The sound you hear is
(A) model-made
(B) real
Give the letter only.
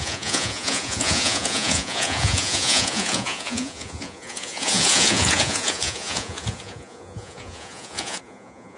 A